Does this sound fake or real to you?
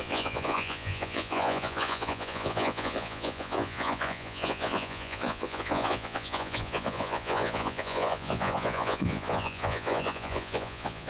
fake